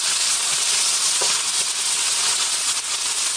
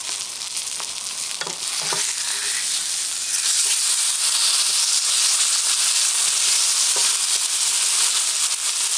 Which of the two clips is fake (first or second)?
first